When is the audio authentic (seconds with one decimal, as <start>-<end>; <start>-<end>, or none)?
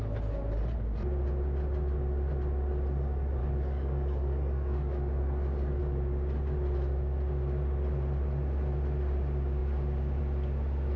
0.0-3.4; 5.8-11.0